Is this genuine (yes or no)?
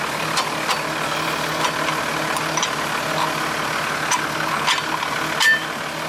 yes